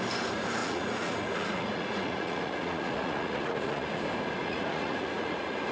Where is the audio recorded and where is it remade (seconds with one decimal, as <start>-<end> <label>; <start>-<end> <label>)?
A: 0.0-0.6 recorded; 0.6-4.0 remade; 4.0-4.4 recorded; 4.4-5.7 remade